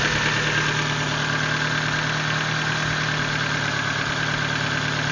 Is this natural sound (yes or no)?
yes